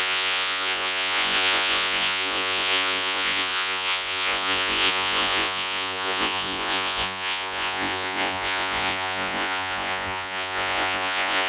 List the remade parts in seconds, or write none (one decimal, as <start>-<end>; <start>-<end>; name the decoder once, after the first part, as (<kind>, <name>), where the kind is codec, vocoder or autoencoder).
0.0-11.5 (vocoder, Vocos)